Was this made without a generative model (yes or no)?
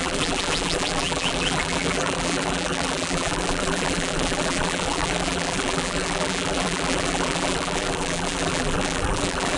no